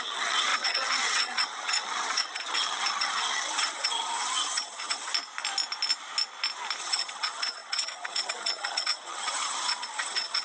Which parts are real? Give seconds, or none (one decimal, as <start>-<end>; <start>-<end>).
5.1-6.8